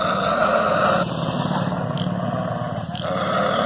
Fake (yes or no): no